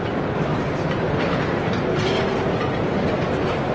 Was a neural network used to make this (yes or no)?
no